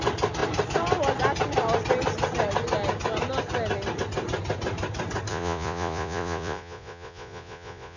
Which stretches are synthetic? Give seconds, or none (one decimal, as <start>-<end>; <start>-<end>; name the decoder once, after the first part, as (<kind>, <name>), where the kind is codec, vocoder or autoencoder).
5.3-8.0 (vocoder, Vocos)